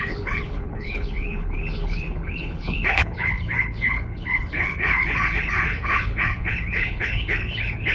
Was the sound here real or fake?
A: fake